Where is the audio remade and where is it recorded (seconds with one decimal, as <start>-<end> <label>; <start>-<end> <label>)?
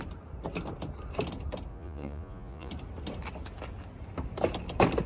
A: 0.0-1.7 recorded; 1.7-2.7 remade; 2.7-5.1 recorded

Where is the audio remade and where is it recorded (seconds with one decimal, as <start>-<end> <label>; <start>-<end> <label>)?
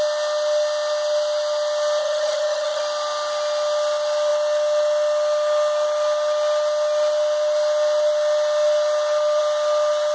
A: 0.0-2.0 recorded; 2.0-2.8 remade; 2.8-10.1 recorded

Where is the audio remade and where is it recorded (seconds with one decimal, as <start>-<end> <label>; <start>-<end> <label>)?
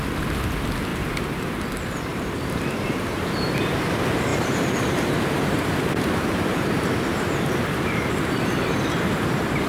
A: 0.0-0.9 recorded; 0.9-1.6 remade; 1.6-2.1 recorded; 2.1-3.2 remade; 3.2-4.3 recorded; 4.3-9.7 remade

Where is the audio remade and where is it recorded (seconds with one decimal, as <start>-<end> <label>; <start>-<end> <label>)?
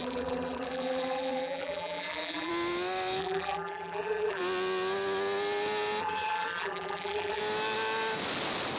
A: 0.0-2.5 remade; 2.5-3.2 recorded; 3.2-4.4 remade; 4.4-6.0 recorded; 6.0-7.4 remade; 7.4-8.8 recorded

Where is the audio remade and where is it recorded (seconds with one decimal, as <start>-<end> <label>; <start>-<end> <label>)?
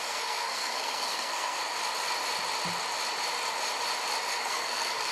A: 0.0-1.6 remade; 1.6-4.2 recorded; 4.2-5.1 remade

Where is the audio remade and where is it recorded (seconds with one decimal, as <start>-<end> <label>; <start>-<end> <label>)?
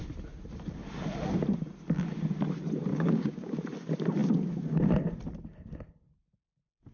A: 0.0-2.9 recorded; 2.9-3.5 remade; 3.5-6.9 recorded